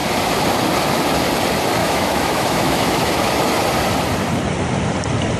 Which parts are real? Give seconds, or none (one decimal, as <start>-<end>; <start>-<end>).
0.0-1.8; 3.3-5.4

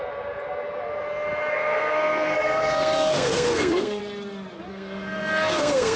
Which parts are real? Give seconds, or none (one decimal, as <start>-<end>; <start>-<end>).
0.0-1.5; 4.0-4.7

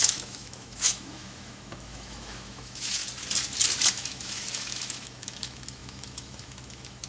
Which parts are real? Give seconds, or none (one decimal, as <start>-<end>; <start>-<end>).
3.0-3.9

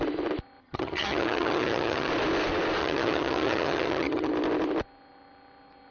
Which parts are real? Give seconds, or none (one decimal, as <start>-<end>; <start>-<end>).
0.0-0.6; 2.1-2.8; 4.3-5.9

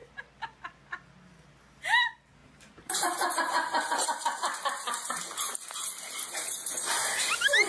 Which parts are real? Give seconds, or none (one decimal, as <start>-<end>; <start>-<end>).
0.0-2.4; 7.0-7.7

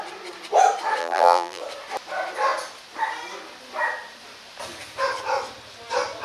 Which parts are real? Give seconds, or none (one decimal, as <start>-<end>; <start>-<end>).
0.0-1.0; 1.6-6.2